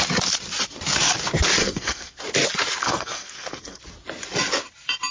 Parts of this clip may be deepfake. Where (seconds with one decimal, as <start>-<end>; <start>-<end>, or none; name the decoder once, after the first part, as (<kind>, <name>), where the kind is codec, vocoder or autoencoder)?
1.6-2.2 (codec, SNAC); 2.8-3.8